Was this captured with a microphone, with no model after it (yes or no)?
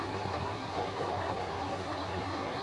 no